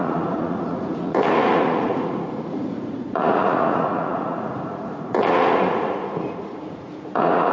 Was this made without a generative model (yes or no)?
no